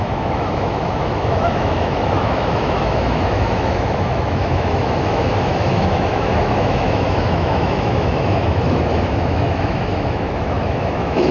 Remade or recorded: remade